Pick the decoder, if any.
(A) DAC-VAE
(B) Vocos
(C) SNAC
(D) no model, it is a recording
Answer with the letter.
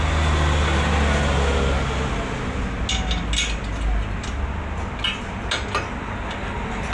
D